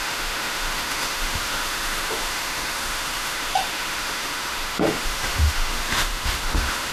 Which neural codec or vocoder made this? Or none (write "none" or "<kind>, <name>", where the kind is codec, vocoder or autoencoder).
autoencoder, DAC-VAE